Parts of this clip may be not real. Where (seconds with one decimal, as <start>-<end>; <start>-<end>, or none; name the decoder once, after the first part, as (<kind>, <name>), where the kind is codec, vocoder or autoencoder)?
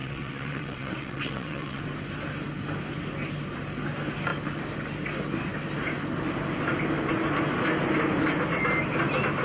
0.0-1.8 (vocoder, WaveNeXt)